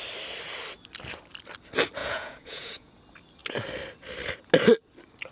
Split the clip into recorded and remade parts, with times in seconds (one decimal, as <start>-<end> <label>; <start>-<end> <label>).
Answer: 0.0-2.0 recorded; 2.0-2.9 remade; 2.9-5.3 recorded